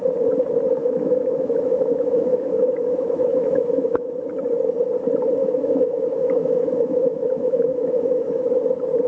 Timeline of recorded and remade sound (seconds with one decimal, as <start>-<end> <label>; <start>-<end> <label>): 0.0-0.8 recorded; 0.8-4.1 remade; 4.1-5.4 recorded; 5.4-8.5 remade; 8.5-9.1 recorded